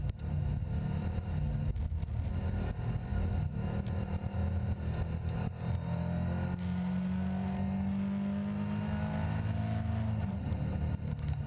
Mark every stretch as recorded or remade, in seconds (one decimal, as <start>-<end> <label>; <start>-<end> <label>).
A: 0.0-11.5 recorded